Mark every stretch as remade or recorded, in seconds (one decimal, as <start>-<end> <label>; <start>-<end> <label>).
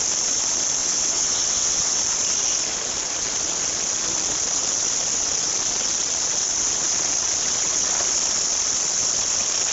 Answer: 0.0-0.8 recorded; 0.8-2.0 remade; 2.0-9.7 recorded